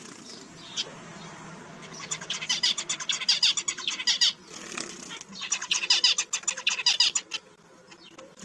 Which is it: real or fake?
real